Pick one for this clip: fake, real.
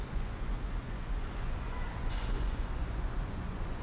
fake